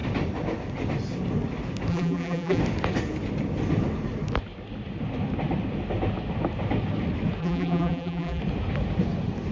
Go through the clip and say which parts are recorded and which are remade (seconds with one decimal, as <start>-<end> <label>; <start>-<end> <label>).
0.0-1.9 recorded; 1.9-2.6 remade; 2.6-7.4 recorded; 7.4-8.4 remade; 8.4-9.5 recorded